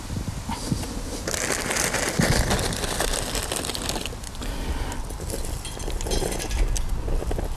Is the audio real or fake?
real